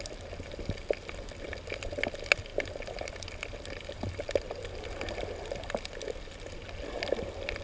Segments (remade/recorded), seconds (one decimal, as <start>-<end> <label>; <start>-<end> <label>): 0.0-7.6 recorded